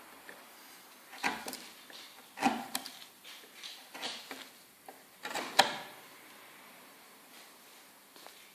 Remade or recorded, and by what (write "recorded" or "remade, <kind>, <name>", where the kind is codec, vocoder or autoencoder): recorded